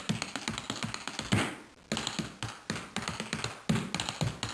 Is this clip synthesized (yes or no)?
no